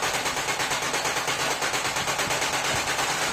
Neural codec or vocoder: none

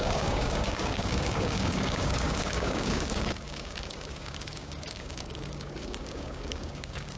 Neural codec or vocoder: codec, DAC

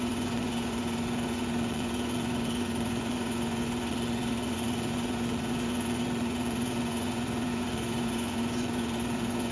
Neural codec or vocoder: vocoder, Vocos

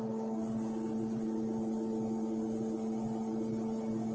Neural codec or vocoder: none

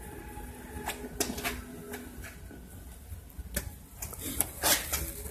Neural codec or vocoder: none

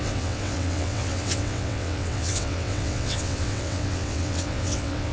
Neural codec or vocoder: vocoder, WaveNeXt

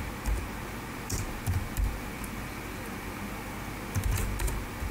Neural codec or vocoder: none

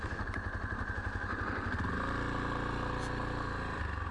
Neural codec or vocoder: none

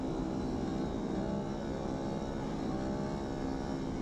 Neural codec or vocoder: none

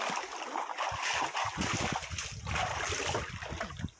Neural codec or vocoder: none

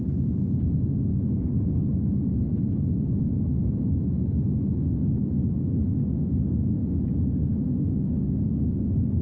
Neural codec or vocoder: none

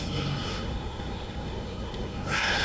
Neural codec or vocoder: codec, SNAC